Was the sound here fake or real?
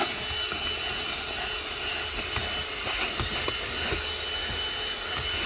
real